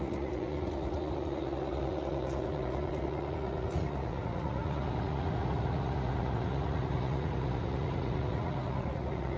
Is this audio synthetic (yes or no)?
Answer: yes